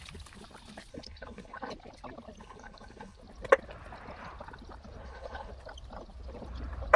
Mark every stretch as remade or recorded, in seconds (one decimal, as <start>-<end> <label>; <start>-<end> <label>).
0.0-0.9 recorded; 0.9-1.7 remade; 1.7-2.4 recorded; 2.4-3.2 remade; 3.2-5.0 recorded; 5.0-5.5 remade; 5.5-7.0 recorded